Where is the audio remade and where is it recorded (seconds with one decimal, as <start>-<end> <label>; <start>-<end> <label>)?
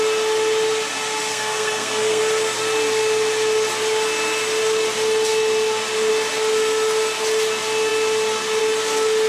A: 0.0-1.3 recorded; 1.3-2.2 remade; 2.2-9.3 recorded